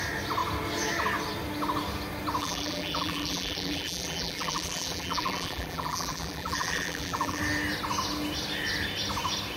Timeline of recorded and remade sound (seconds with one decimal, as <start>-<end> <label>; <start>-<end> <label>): 0.0-2.4 recorded; 2.4-7.4 remade; 7.4-9.6 recorded